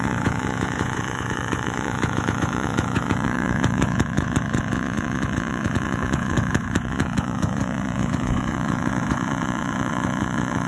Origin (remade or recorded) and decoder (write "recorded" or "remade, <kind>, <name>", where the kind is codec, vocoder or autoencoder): remade, vocoder, Vocos